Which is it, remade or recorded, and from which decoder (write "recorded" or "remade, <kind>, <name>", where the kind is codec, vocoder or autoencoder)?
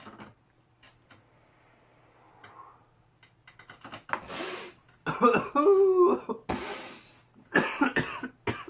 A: recorded